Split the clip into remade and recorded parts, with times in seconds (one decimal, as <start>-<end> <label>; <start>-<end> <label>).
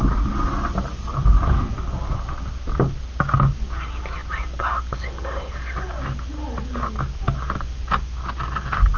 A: 0.0-0.9 recorded; 0.9-2.3 remade; 2.3-9.0 recorded